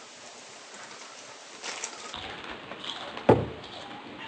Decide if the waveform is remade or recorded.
recorded